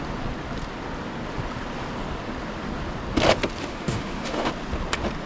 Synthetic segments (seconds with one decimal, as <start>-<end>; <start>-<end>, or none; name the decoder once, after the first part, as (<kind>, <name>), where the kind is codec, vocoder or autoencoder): 3.6-4.5 (autoencoder, DAC-VAE)

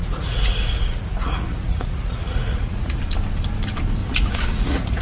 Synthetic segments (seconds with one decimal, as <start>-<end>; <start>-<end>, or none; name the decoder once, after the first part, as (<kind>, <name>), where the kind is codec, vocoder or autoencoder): 0.0-3.0 (vocoder, Vocos); 4.0-5.0

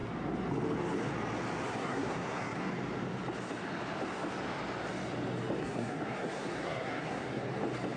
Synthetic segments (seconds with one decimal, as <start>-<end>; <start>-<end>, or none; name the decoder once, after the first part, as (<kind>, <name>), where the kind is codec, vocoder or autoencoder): 1.7-2.7 (codec, SNAC); 5.6-7.5

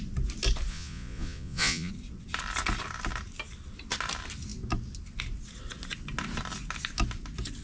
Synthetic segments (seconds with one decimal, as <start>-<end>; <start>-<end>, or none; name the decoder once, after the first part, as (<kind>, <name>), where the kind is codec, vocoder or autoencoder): 0.7-1.9 (vocoder, Vocos)